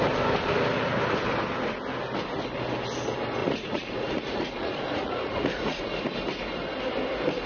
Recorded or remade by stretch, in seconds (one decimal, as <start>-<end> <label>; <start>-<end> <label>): 0.0-3.4 recorded; 3.4-5.8 remade; 5.8-7.5 recorded